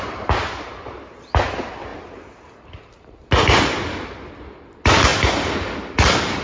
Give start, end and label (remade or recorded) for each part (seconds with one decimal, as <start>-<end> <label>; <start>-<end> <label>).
0.0-6.4 recorded